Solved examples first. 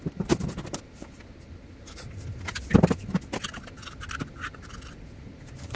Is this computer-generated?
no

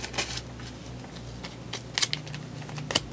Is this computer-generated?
no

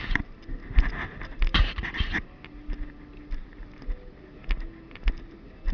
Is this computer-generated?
no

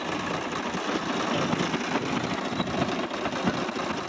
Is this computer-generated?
no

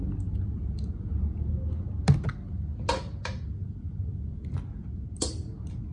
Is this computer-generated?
no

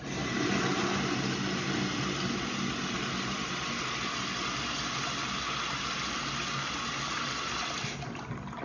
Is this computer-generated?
no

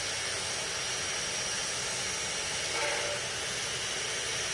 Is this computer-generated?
no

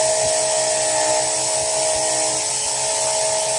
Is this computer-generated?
no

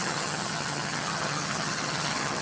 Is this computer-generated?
yes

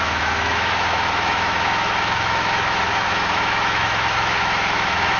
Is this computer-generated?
yes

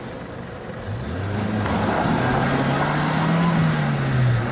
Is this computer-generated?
no